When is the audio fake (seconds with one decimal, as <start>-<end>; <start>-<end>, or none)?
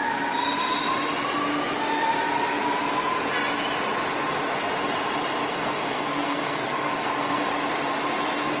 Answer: 5.4-7.5